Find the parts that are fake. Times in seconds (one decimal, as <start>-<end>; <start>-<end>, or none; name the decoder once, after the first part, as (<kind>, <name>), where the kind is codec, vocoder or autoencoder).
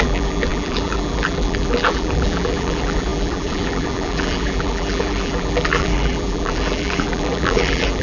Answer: 0.0-8.0 (vocoder, BigVGAN v2)